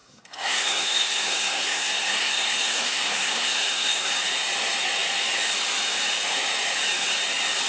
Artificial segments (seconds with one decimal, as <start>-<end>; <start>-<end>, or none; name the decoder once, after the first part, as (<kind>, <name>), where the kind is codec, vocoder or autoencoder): 0.0-4.1 (codec, SNAC)

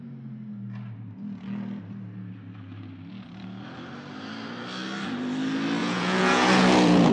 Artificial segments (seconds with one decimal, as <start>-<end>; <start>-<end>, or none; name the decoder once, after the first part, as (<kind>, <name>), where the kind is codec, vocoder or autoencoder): 5.8-7.1 (vocoder, Vocos)

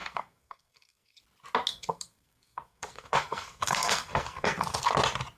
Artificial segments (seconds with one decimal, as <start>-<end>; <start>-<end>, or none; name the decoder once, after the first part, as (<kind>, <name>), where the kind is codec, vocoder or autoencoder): 0.0-1.2 (codec, SNAC); 1.7-4.9

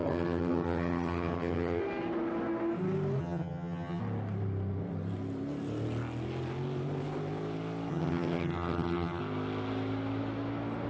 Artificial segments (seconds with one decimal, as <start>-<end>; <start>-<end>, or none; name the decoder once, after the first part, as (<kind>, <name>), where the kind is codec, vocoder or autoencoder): 0.0-1.8 (vocoder, HiFi-GAN); 3.2-4.0; 7.9-9.2

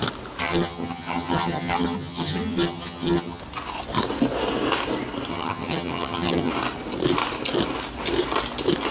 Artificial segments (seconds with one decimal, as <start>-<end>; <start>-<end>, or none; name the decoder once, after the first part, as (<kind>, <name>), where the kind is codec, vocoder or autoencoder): 0.4-3.4 (vocoder, HiFi-GAN); 5.3-6.5